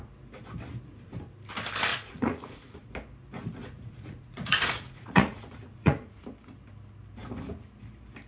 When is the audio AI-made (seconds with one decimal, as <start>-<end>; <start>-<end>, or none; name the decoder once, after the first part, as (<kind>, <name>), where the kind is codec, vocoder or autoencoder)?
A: 1.9-2.9 (vocoder, Vocos); 3.6-6.1